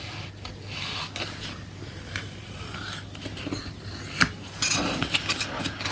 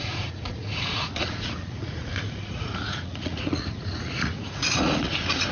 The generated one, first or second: second